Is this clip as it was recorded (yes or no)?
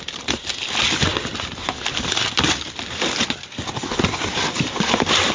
yes